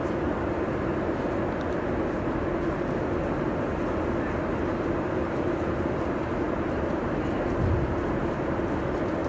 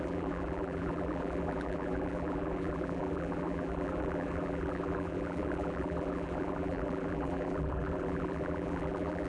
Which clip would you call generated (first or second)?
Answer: second